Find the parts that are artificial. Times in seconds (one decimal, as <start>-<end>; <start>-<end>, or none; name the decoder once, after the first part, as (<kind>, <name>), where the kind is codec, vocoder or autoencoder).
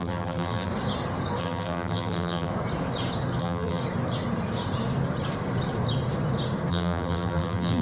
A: 0.0-0.7 (vocoder, BigVGAN v2); 1.4-2.5; 3.4-3.8; 6.7-7.8